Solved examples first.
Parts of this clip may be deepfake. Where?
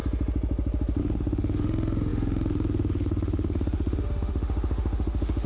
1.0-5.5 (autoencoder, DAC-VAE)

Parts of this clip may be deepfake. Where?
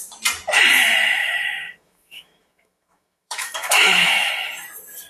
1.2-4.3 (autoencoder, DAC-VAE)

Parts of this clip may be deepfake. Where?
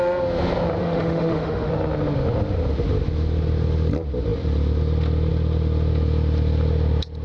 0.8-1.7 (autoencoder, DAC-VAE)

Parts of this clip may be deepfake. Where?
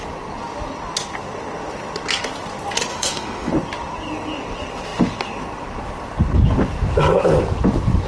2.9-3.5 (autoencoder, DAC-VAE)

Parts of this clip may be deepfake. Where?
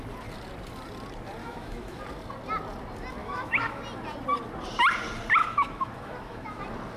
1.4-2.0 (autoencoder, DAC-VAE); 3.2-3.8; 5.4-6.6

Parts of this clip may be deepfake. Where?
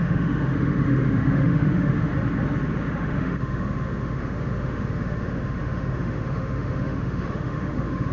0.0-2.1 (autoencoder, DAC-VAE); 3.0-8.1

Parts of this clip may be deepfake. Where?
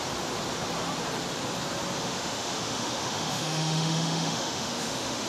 2.0-5.3 (autoencoder, DAC-VAE)